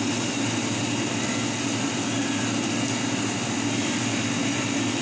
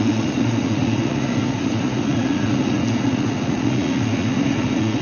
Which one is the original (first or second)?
first